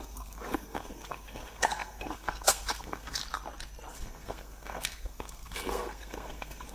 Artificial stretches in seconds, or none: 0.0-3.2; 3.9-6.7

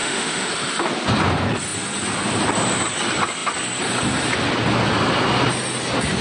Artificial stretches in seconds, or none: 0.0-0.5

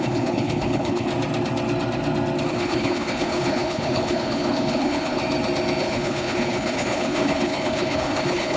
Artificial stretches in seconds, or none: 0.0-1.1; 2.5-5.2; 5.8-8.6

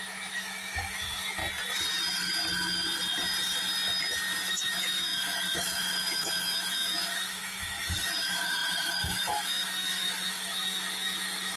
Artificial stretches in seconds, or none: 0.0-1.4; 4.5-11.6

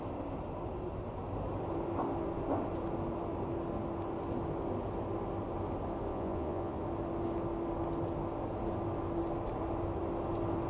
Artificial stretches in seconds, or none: 6.1-6.8